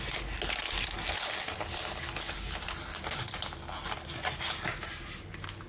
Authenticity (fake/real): real